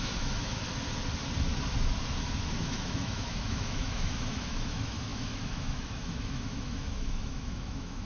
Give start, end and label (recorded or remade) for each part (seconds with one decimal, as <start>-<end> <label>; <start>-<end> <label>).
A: 0.0-0.6 remade; 0.6-2.4 recorded; 2.4-8.1 remade